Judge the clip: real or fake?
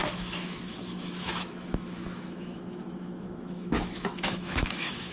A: fake